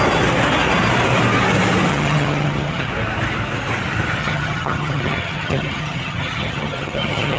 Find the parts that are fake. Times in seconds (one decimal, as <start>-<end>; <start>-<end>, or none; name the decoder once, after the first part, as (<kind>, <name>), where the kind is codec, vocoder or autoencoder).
1.9-2.9 (vocoder, HiFi-GAN); 4.2-7.4